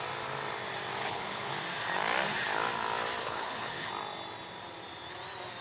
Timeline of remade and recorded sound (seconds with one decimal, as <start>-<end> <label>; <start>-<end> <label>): 0.0-1.0 recorded; 1.0-1.5 remade; 1.5-3.2 recorded; 3.2-3.9 remade; 3.9-5.6 recorded

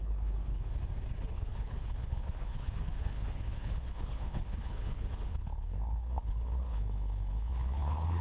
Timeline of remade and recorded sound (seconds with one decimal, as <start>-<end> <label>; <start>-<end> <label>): 0.0-0.7 remade; 0.7-1.3 recorded; 1.3-8.2 remade

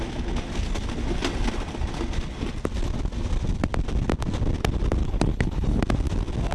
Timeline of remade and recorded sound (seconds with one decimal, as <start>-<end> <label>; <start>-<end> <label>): 0.0-5.0 recorded; 5.0-5.8 remade; 5.8-6.5 recorded

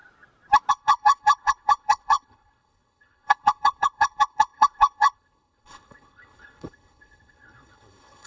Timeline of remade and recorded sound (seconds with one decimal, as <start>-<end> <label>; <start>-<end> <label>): 0.0-0.7 recorded; 0.7-8.3 remade

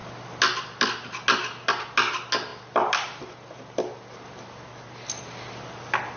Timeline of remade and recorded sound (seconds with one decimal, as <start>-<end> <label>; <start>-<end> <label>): 0.0-6.2 recorded

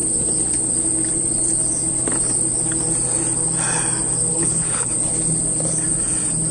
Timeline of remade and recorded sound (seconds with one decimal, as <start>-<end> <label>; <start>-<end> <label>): 0.0-4.3 recorded; 4.3-4.9 remade; 4.9-6.5 recorded

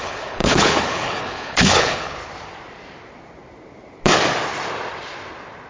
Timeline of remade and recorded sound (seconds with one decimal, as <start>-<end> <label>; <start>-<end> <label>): 0.0-2.2 remade; 2.2-5.7 recorded